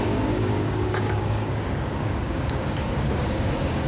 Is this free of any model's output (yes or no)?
no